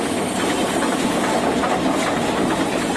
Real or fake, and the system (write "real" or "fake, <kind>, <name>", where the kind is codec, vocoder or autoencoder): real